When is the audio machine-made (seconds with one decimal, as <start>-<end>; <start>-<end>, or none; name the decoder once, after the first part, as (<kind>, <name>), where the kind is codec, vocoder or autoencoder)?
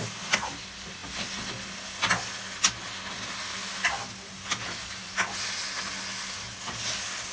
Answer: none